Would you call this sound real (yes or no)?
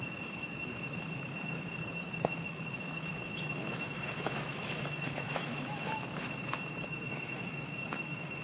no